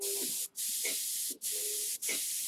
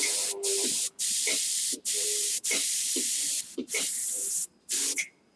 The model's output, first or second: second